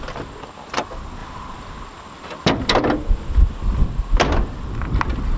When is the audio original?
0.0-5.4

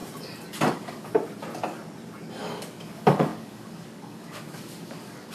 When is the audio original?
0.0-0.7; 1.1-2.4

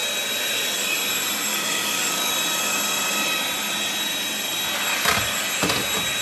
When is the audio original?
0.0-1.5; 2.3-6.2